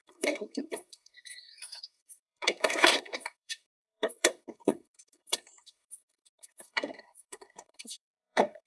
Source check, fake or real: fake